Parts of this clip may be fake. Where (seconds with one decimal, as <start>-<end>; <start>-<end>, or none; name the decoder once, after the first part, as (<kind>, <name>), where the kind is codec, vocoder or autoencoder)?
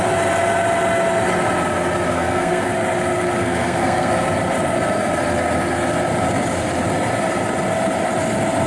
2.1-2.7 (codec, SNAC); 3.4-4.1